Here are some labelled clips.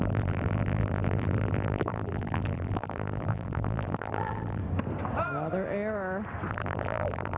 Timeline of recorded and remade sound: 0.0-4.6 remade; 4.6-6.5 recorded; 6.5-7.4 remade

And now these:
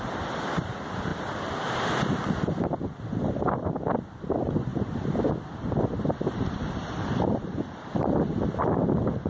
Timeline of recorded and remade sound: 0.0-9.3 recorded

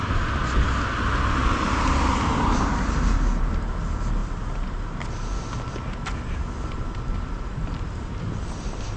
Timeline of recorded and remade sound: 0.0-9.0 recorded

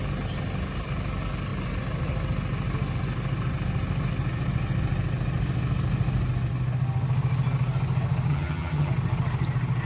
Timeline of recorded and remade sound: 0.0-8.3 recorded; 8.3-8.9 remade; 8.9-9.8 recorded